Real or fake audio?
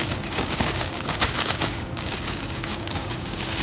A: fake